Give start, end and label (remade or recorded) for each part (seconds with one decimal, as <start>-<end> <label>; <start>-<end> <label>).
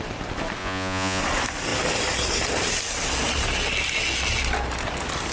0.0-0.6 recorded; 0.6-1.2 remade; 1.2-5.3 recorded